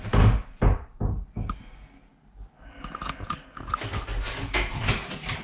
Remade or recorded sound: recorded